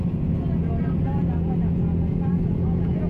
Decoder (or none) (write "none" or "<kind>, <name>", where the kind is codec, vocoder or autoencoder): vocoder, Vocos